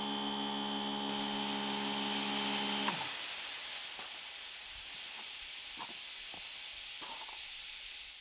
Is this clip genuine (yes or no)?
yes